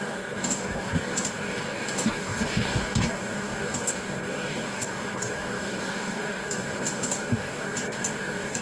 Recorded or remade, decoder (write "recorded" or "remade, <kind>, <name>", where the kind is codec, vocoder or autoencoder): remade, codec, DAC